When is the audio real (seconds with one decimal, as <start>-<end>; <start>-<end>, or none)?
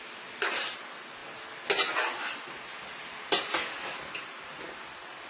0.0-5.3